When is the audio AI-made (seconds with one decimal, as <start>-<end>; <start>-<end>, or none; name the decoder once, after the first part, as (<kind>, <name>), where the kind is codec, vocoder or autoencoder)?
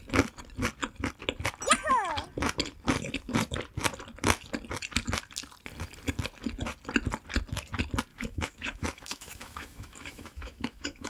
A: 8.1-11.1 (autoencoder, DAC-VAE)